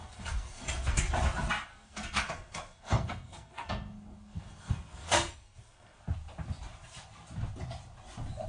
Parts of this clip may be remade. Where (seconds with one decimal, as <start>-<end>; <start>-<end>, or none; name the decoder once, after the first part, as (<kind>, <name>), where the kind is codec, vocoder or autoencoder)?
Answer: 0.0-1.0 (codec, SNAC); 1.7-6.0